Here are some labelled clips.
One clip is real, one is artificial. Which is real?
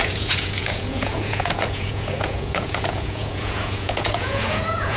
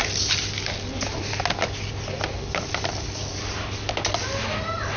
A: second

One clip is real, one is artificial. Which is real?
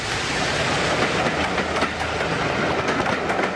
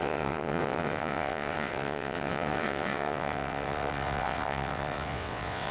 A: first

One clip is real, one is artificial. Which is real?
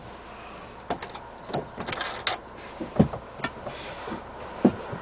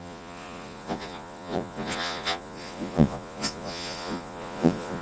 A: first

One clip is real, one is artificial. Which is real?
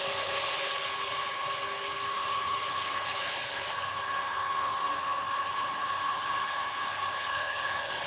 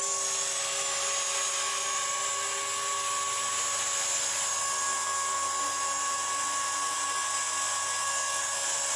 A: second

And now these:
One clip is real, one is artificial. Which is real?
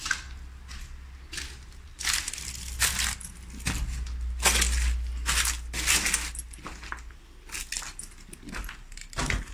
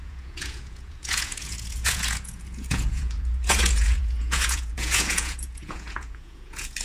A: first